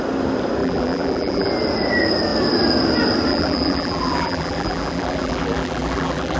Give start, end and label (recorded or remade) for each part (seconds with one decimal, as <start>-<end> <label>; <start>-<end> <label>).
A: 0.0-0.6 recorded; 0.6-1.5 remade; 1.5-3.3 recorded; 3.3-6.4 remade